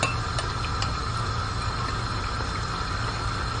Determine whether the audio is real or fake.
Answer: real